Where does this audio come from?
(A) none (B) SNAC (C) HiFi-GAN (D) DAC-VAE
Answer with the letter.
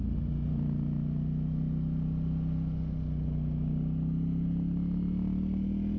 A